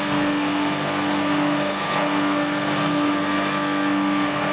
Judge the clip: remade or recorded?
remade